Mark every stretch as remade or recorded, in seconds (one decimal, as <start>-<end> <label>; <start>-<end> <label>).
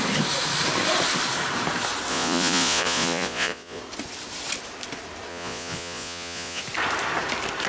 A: 0.0-2.1 recorded; 2.1-3.8 remade; 3.8-5.3 recorded; 5.3-6.6 remade; 6.6-7.7 recorded